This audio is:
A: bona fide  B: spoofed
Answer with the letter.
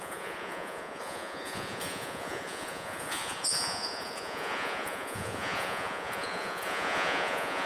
B